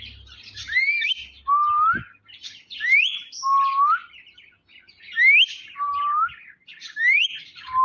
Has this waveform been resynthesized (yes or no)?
no